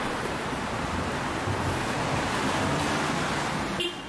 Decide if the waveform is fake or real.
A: real